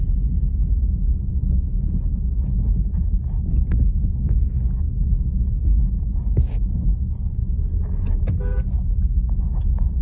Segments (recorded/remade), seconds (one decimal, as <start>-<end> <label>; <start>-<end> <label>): 0.0-10.0 recorded